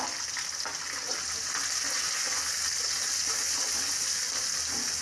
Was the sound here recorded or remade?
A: recorded